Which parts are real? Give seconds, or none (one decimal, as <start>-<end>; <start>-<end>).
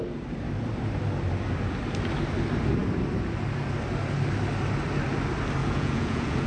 0.0-5.6